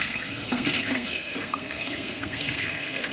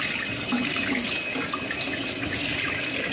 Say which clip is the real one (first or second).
second